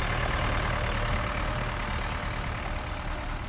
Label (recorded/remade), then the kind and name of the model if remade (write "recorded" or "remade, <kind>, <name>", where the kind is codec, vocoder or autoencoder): recorded